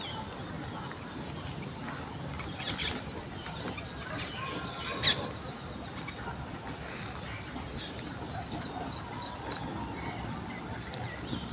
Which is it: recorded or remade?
recorded